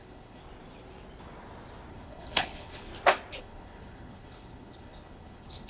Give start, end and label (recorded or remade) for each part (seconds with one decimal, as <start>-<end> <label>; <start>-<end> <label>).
0.0-0.4 remade; 0.4-1.9 recorded; 1.9-2.9 remade; 2.9-3.4 recorded; 3.4-5.7 remade